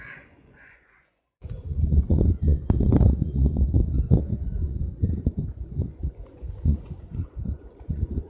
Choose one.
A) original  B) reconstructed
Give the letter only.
B